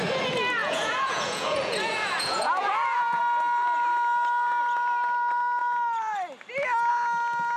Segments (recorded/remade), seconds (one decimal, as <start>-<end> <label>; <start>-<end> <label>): 0.0-0.6 recorded; 0.6-3.2 remade; 3.2-7.6 recorded